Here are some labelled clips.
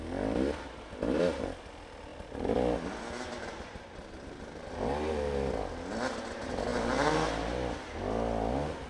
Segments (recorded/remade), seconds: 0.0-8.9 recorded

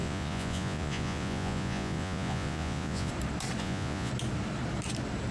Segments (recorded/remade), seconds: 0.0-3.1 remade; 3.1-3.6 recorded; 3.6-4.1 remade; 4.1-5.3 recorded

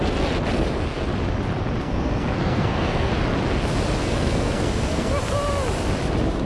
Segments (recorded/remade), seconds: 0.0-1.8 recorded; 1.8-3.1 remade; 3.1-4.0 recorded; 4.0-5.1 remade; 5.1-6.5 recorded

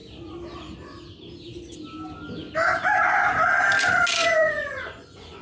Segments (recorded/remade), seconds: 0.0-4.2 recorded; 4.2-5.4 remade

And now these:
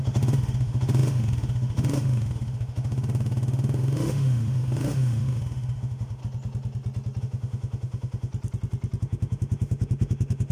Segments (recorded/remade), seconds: 0.0-6.2 remade; 6.2-7.2 recorded; 7.2-8.3 remade; 8.3-9.0 recorded; 9.0-10.5 remade

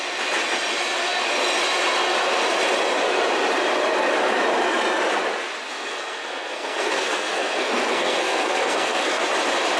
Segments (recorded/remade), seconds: 0.0-5.7 recorded; 5.7-9.2 remade; 9.2-9.8 recorded

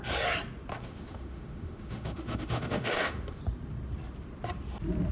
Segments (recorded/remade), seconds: 0.0-0.7 recorded; 0.7-3.4 remade; 3.4-5.1 recorded

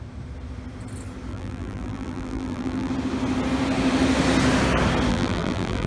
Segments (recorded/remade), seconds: 0.0-1.3 recorded; 1.3-2.9 remade; 2.9-5.1 recorded; 5.1-5.9 remade